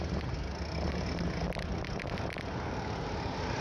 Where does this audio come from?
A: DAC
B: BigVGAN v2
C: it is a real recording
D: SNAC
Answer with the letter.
C